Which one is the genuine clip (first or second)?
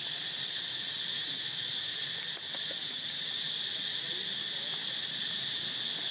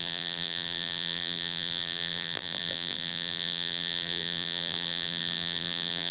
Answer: first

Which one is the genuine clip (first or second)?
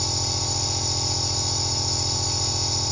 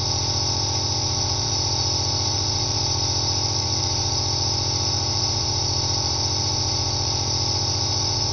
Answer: first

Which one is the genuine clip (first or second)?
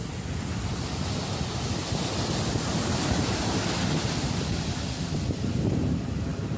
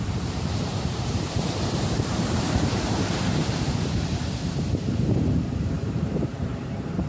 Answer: first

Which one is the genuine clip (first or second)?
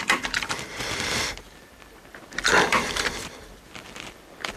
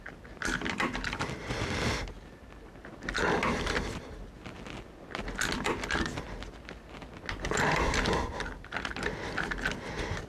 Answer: second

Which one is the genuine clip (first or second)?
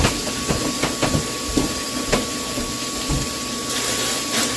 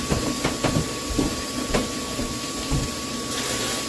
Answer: first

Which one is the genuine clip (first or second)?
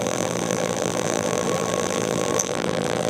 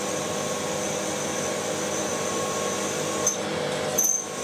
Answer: second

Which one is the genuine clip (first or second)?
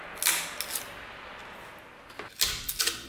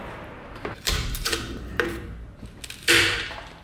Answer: first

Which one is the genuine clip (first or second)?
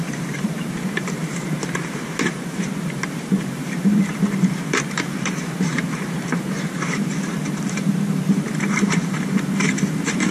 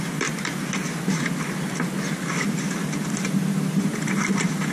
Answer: second